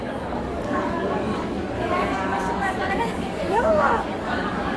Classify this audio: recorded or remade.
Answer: remade